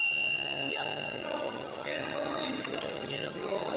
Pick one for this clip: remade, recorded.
remade